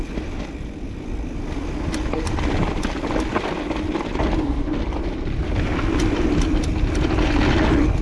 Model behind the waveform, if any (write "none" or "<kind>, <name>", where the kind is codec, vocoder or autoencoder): none